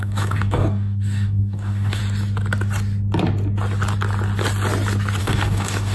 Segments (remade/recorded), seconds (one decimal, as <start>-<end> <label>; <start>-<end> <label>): 0.0-2.0 remade; 2.0-5.2 recorded; 5.2-5.9 remade